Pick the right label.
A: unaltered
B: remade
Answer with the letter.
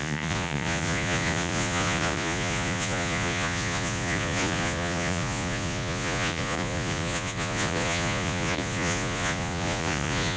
B